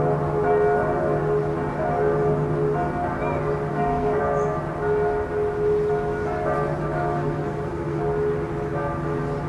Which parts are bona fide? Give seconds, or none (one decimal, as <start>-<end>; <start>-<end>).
0.0-3.7; 4.2-6.8; 8.0-9.5